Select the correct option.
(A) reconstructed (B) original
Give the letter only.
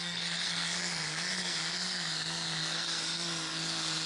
A